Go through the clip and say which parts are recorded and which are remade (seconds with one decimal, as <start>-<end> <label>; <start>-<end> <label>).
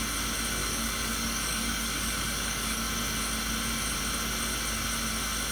0.0-0.6 recorded; 0.6-2.9 remade; 2.9-5.5 recorded